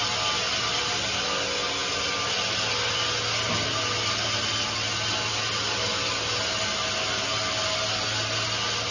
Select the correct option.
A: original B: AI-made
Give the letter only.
A